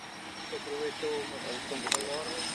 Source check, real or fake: fake